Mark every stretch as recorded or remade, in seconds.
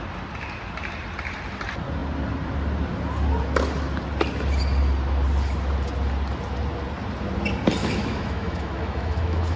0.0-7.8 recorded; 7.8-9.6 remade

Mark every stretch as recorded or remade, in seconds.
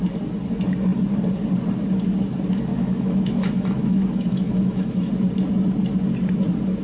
0.0-2.7 recorded; 2.7-5.1 remade; 5.1-6.8 recorded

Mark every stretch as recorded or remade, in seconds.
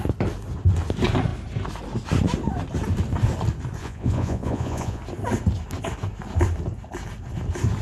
0.0-3.8 recorded; 3.8-5.0 remade; 5.0-7.8 recorded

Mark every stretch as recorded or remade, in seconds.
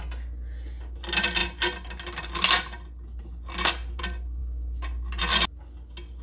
0.0-6.2 recorded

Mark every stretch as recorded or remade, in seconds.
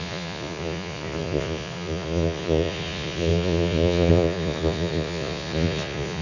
0.0-6.2 remade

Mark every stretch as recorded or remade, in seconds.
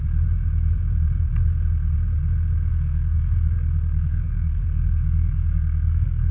0.0-2.7 recorded; 2.7-6.3 remade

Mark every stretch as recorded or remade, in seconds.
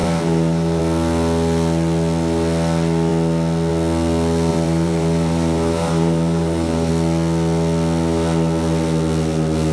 0.0-0.8 remade; 0.8-4.5 recorded; 4.5-6.9 remade; 6.9-9.7 recorded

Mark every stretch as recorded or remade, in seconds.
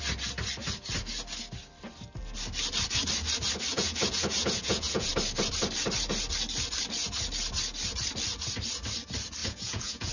0.0-3.7 recorded; 3.7-5.1 remade; 5.1-9.4 recorded; 9.4-10.1 remade